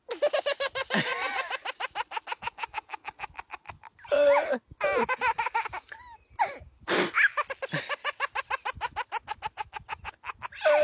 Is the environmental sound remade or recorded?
recorded